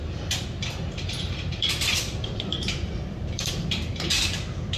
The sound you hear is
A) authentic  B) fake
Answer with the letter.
B